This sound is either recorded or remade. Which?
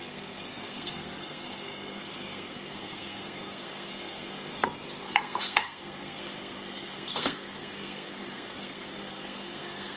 remade